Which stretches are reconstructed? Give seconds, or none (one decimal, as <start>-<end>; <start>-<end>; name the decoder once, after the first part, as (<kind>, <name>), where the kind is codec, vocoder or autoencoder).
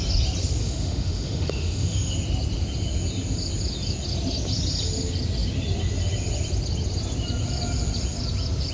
0.6-2.1 (autoencoder, DAC-VAE)